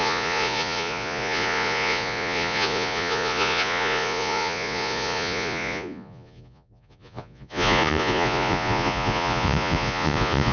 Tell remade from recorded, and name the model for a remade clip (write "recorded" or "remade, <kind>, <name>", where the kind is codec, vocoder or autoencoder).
remade, vocoder, Vocos